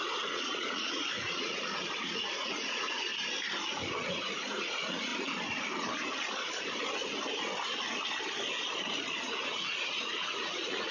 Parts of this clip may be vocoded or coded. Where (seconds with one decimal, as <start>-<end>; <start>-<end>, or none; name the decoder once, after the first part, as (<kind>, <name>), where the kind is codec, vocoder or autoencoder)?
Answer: 0.0-3.1 (vocoder, Vocos); 3.7-5.1; 9.2-10.9